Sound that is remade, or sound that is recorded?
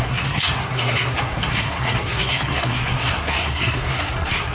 remade